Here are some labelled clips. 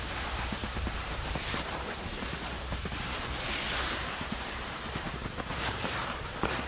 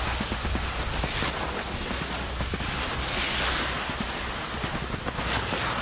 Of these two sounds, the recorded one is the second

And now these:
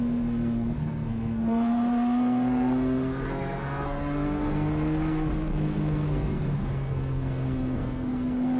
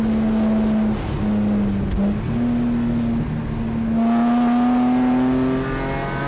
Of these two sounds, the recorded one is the second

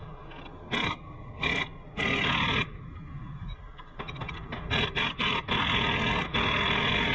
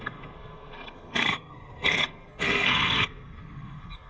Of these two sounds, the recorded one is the first